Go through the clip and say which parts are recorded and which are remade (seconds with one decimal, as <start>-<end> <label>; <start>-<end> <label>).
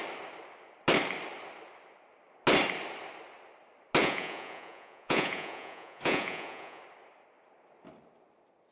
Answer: 0.0-4.0 recorded; 4.0-6.8 remade; 6.8-8.7 recorded